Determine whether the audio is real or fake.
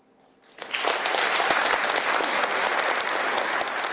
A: real